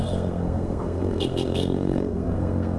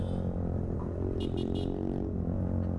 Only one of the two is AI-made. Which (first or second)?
first